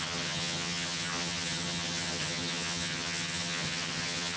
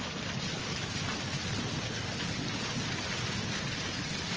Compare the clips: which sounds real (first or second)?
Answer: second